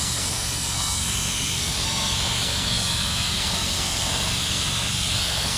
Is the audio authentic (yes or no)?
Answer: no